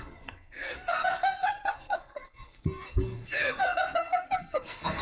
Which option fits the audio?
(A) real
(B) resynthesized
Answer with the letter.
B